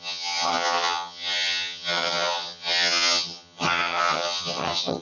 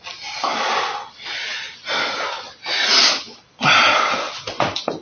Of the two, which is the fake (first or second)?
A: first